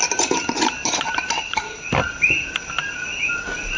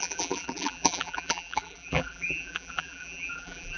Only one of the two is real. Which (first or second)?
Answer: first